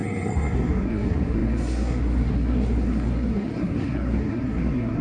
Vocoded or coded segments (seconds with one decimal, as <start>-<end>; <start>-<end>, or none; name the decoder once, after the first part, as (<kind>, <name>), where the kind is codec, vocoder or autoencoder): 0.0-5.0 (codec, SNAC)